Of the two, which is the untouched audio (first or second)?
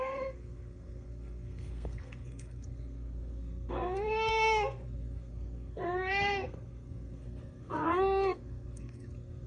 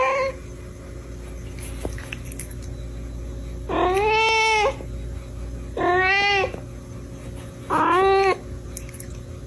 second